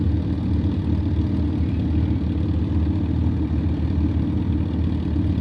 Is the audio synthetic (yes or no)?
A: no